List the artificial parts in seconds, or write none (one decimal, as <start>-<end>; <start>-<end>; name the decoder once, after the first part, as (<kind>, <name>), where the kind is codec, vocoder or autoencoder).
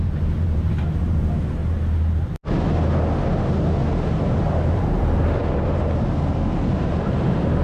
0.0-1.6 (vocoder, BigVGAN v2); 4.1-5.4; 6.6-7.6